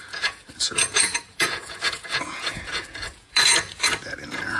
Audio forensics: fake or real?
fake